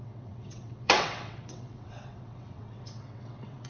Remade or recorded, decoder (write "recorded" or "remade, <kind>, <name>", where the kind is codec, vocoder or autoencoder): remade, vocoder, WaveNeXt